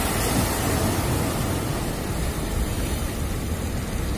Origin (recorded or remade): recorded